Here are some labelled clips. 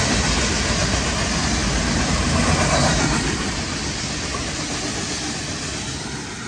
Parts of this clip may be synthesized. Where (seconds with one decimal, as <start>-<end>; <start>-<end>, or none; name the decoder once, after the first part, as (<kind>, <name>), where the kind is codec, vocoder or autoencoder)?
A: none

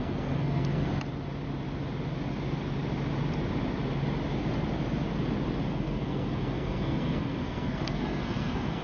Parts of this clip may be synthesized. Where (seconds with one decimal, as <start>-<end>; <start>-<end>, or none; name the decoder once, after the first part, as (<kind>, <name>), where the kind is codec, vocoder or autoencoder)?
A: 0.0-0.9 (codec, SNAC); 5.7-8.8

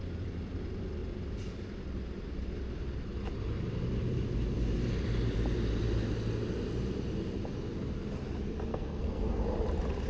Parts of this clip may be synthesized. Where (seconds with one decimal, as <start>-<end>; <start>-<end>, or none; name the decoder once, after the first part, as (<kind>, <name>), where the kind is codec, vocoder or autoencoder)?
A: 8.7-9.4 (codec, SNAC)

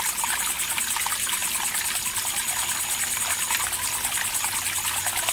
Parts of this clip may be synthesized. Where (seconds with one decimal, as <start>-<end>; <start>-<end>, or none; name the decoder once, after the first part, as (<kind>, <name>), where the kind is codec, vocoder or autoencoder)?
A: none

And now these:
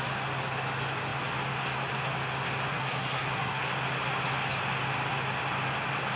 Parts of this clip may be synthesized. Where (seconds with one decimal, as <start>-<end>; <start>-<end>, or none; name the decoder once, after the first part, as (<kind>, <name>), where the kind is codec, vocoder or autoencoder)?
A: 2.7-3.6 (codec, SNAC)